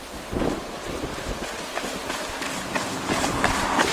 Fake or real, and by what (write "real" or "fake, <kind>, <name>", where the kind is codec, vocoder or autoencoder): real